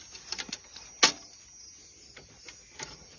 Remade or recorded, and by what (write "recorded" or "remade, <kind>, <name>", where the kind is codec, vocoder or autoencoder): recorded